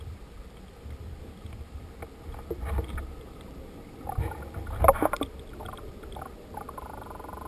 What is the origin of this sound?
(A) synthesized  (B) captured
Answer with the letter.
B